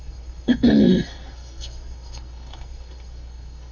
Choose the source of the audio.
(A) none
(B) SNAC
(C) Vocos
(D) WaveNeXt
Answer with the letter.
B